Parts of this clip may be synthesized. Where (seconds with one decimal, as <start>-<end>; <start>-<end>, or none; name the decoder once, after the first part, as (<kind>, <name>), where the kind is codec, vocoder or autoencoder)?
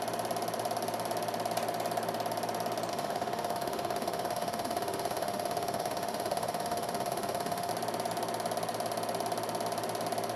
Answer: 2.9-7.7 (autoencoder, DAC-VAE)